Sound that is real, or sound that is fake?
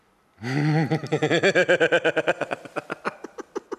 real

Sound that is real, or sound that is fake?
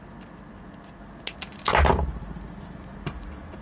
real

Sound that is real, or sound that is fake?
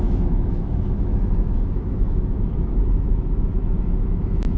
fake